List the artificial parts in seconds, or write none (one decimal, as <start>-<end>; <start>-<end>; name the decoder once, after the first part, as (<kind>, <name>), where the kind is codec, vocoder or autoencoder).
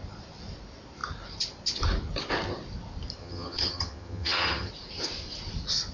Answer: 3.2-4.7 (vocoder, HiFi-GAN)